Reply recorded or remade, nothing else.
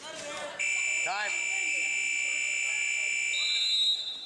recorded